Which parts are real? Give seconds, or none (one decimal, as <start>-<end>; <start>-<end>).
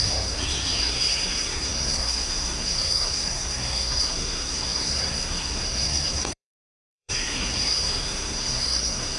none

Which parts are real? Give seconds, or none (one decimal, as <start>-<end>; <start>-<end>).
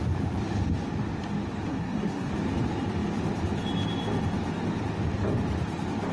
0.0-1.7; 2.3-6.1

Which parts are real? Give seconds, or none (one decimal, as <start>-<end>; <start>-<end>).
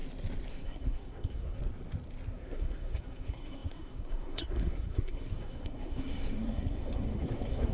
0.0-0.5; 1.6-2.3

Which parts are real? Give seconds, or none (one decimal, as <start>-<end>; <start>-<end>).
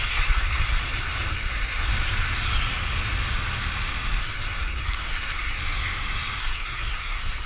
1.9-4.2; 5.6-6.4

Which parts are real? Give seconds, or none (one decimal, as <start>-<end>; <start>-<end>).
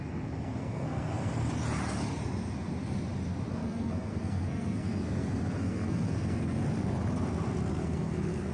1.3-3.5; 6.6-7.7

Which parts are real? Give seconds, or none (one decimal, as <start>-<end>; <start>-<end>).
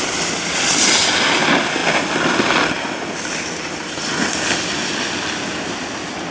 0.0-6.3